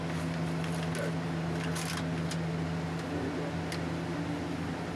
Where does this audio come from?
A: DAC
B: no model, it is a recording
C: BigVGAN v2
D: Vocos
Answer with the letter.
B